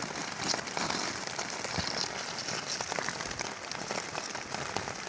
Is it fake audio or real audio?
real